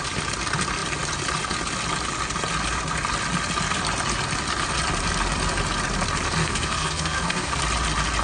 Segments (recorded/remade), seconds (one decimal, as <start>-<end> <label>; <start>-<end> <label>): 0.0-6.4 recorded; 6.4-7.6 remade; 7.6-8.2 recorded